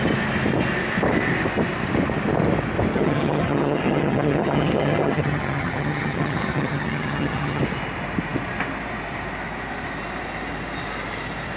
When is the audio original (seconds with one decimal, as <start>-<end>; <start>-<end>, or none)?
0.0-2.9; 7.6-11.6